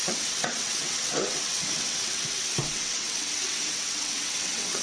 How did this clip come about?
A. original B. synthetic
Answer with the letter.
B